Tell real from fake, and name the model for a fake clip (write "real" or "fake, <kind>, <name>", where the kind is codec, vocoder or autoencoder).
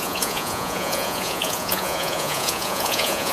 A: fake, vocoder, Vocos